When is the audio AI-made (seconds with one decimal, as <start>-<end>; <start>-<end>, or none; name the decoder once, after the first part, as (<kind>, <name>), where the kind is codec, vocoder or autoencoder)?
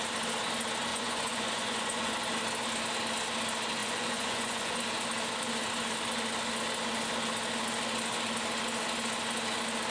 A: 0.9-2.1 (vocoder, Vocos); 3.8-4.8